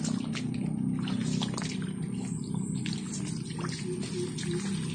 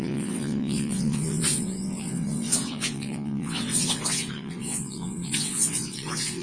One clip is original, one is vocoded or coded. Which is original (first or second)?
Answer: first